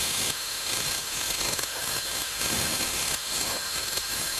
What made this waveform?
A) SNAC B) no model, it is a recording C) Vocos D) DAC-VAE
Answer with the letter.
D